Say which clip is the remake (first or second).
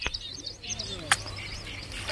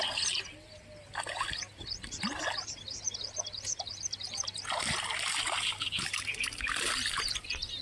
second